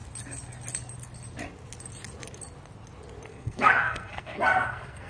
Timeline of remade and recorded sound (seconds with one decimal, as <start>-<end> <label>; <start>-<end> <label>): 0.0-3.3 recorded; 3.3-5.1 remade